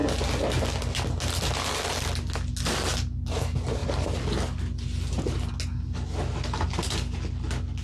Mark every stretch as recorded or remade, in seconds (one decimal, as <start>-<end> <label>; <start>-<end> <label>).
0.0-7.8 recorded